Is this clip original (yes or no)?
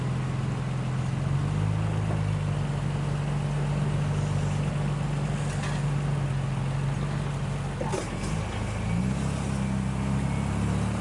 yes